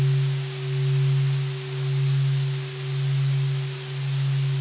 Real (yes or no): yes